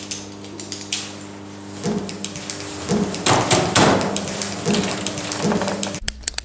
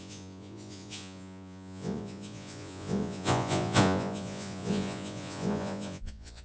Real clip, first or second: first